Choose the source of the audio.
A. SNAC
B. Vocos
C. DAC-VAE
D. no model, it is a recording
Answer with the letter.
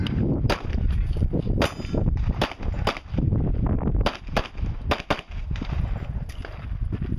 D